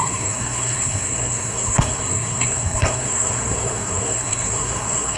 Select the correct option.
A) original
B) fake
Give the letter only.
B